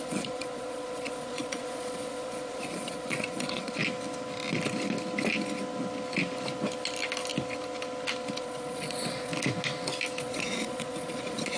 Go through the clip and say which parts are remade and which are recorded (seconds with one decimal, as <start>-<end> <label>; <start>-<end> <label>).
0.0-3.8 remade; 3.8-8.4 recorded; 8.4-9.3 remade; 9.3-10.2 recorded; 10.2-11.6 remade